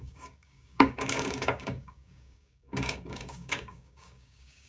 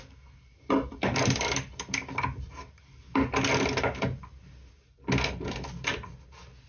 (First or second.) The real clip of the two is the second